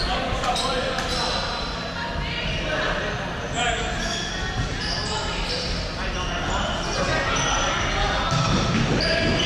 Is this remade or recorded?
recorded